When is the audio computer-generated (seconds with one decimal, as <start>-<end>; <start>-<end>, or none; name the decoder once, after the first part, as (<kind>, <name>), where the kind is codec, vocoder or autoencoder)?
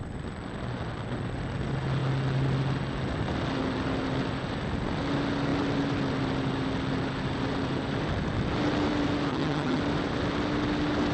9.3-9.8 (vocoder, HiFi-GAN)